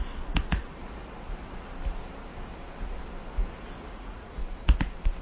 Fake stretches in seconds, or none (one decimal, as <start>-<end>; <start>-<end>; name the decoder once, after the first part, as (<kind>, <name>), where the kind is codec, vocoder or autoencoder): 0.0-0.8 (vocoder, Vocos); 3.9-4.4